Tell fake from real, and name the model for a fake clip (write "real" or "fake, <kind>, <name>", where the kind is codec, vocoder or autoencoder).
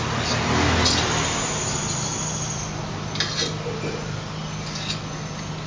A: real